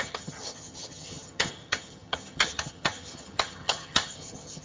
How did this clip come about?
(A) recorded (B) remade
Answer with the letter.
B